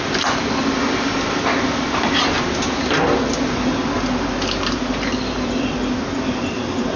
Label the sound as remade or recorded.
recorded